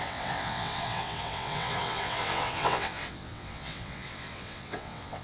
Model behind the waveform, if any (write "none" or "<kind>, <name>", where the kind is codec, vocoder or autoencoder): vocoder, WaveNeXt